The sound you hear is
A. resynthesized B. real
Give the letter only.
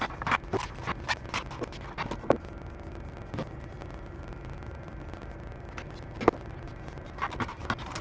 B